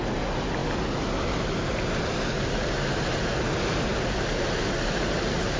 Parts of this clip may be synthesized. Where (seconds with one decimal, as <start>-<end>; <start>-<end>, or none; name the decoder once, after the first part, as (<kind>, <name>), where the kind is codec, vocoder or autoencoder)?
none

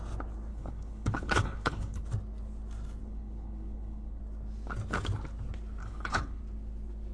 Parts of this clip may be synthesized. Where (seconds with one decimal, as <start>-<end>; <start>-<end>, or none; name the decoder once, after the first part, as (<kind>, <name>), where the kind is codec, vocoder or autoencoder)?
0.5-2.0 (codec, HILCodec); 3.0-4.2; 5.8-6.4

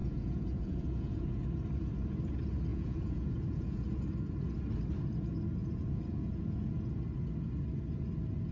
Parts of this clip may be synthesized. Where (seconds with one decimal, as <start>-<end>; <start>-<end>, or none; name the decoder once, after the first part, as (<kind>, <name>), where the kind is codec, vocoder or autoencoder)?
0.0-1.4 (vocoder, Vocos); 2.7-4.0; 5.6-6.9